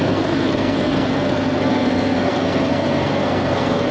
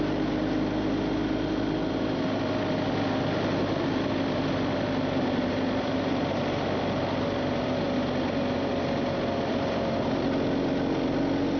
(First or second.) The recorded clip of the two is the second